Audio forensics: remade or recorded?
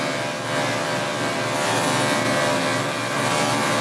recorded